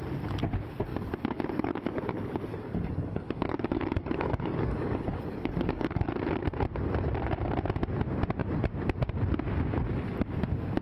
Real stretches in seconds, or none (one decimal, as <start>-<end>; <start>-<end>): 0.0-0.9; 6.1-10.8